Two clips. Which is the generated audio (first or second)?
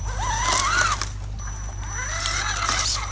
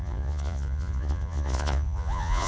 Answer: second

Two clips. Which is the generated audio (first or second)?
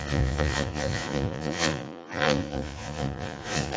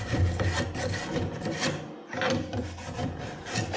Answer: first